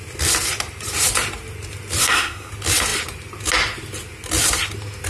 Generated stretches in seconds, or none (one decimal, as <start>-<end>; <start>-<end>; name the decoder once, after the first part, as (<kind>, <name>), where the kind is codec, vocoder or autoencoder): 2.0-2.5 (codec, SNAC)

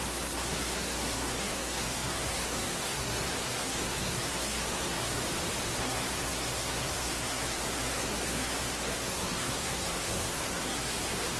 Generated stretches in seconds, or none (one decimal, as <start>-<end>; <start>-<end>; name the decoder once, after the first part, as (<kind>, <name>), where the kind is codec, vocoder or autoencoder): 0.0-5.2 (codec, SNAC); 5.8-11.4

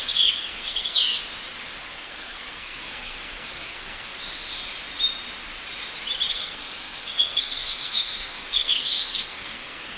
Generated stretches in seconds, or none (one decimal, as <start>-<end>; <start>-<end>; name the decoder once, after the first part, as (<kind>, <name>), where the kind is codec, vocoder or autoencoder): 0.0-1.2 (codec, SNAC); 1.8-4.1; 6.3-10.0

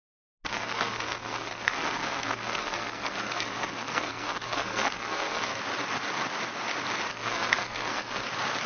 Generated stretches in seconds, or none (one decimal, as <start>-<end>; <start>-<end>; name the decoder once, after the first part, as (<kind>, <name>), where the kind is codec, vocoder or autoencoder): 0.5-5.6 (codec, SNAC); 7.1-8.2

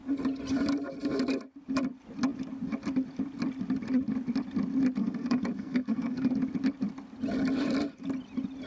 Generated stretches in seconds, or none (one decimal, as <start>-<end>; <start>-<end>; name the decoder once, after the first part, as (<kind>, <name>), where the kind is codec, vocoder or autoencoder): 5.0-6.3 (codec, SNAC)

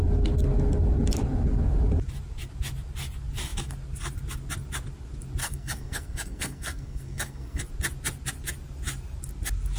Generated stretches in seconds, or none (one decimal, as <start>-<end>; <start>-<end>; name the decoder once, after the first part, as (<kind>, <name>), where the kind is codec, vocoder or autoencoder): 5.4-7.6 (codec, SNAC)